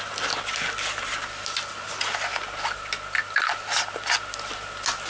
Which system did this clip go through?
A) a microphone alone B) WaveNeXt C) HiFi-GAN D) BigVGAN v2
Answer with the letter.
A